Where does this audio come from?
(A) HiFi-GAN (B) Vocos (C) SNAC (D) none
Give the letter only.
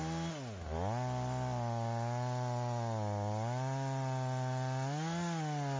D